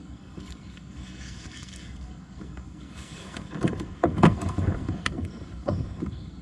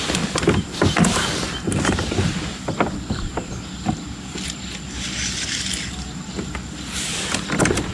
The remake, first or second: first